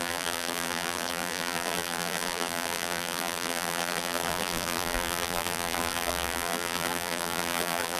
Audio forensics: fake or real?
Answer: fake